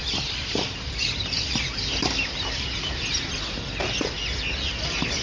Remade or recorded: recorded